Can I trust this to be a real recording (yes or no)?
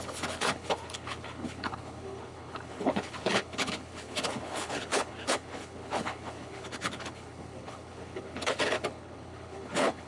no